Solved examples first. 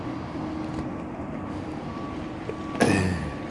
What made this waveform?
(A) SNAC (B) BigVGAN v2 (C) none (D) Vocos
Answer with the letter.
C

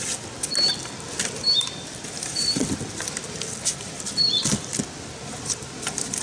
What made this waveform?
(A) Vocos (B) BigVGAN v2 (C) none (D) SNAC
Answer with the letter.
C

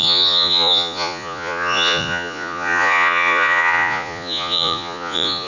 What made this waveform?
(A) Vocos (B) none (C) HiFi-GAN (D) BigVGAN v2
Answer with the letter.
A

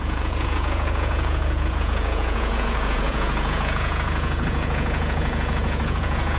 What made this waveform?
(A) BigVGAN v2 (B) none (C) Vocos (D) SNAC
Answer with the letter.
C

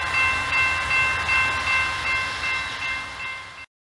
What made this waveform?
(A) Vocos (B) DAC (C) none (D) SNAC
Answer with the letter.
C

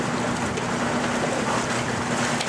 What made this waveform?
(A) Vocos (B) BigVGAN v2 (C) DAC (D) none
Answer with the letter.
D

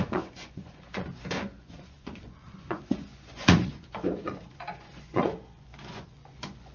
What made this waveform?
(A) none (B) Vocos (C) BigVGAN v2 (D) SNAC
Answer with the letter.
B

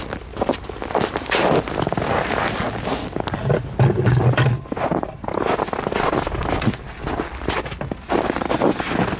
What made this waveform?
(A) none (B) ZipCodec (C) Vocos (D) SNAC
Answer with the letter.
A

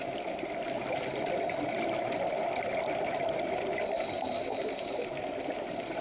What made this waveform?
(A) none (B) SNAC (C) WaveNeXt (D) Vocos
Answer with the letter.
A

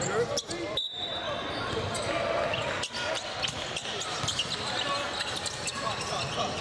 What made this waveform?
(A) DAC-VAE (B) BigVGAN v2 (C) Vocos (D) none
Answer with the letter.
D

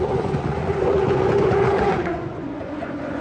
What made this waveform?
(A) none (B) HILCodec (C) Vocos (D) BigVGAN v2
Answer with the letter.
C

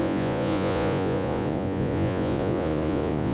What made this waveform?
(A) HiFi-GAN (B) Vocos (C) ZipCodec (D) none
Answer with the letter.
B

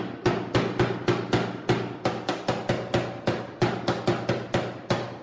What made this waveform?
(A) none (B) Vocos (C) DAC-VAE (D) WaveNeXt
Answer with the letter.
A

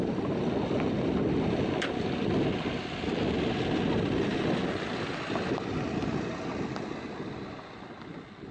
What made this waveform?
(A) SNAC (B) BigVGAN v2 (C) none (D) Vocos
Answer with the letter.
C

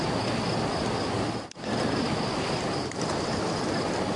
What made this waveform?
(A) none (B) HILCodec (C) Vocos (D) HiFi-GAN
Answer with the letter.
A